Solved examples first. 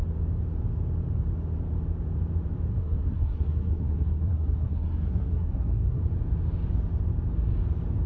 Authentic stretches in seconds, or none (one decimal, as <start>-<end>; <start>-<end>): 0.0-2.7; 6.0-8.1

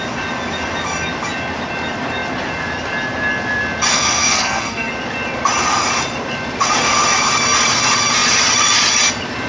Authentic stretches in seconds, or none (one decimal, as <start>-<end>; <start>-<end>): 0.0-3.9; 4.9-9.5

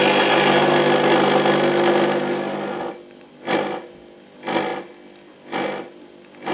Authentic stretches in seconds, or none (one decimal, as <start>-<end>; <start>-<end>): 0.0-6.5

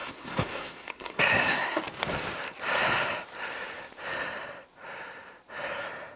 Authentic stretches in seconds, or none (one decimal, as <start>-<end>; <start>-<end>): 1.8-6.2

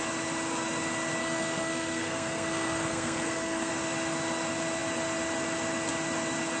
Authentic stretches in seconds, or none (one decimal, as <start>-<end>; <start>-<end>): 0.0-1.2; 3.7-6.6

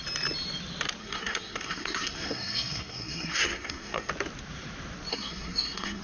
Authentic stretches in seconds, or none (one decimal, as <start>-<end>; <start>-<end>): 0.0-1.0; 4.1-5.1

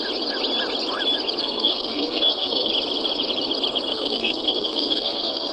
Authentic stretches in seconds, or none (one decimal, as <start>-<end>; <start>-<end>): 0.0-1.4; 2.7-3.9

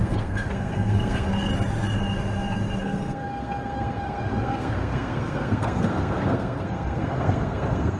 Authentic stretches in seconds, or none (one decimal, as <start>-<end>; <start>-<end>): 1.5-2.8